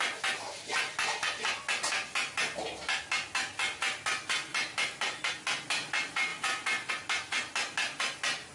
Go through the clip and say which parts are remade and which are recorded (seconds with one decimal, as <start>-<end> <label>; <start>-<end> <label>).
0.0-4.5 recorded; 4.5-5.3 remade; 5.3-8.5 recorded